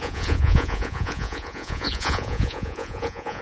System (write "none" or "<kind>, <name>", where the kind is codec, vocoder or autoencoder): vocoder, Vocos